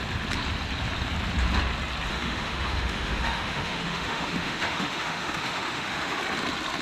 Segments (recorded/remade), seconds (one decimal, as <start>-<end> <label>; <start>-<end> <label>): 0.0-2.1 recorded; 2.1-6.2 remade; 6.2-6.8 recorded